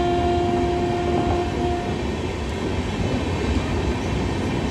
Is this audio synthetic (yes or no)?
no